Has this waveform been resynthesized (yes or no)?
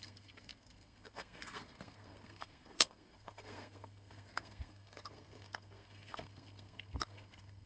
yes